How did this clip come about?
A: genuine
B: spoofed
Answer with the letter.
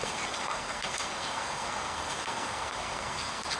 B